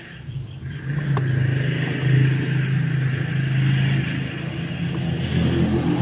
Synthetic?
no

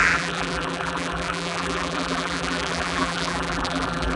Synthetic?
yes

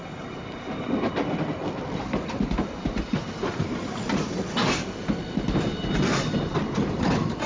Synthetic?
no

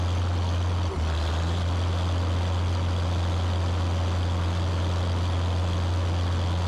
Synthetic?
no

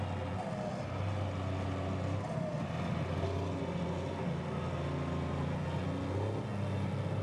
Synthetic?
no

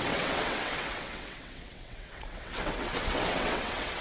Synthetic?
yes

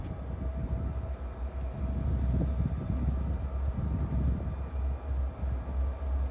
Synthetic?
no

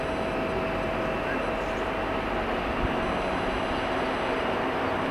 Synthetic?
no